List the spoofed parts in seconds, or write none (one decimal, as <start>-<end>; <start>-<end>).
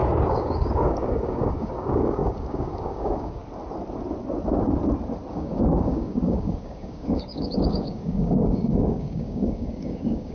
0.0-3.4; 5.3-10.3